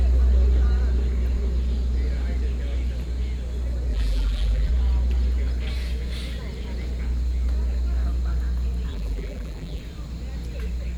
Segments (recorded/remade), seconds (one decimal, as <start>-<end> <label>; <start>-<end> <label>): 0.0-3.9 recorded; 3.9-4.7 remade; 4.7-8.9 recorded; 8.9-9.8 remade; 9.8-11.0 recorded